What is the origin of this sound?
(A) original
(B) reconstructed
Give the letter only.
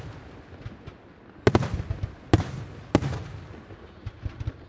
A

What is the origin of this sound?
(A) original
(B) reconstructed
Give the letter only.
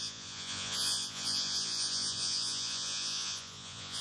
B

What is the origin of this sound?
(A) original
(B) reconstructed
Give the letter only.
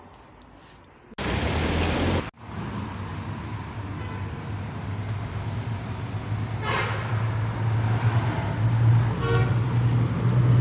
A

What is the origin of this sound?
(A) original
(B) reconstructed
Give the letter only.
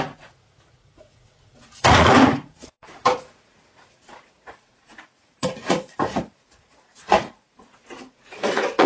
B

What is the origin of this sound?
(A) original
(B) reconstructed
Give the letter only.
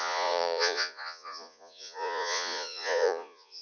B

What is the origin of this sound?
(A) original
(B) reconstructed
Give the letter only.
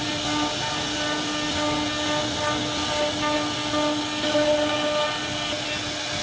A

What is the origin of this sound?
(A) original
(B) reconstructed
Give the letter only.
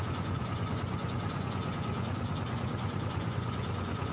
B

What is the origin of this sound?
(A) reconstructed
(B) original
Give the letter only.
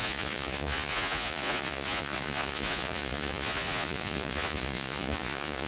A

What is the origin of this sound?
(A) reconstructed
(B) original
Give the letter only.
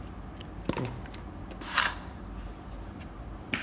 B